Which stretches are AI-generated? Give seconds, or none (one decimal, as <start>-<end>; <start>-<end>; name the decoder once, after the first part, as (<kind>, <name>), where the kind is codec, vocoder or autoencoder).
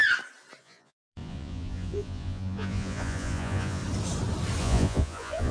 0.6-3.8 (vocoder, Vocos); 4.6-5.5